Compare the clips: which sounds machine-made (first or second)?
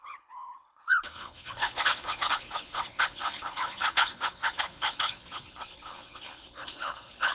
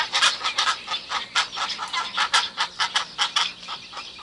first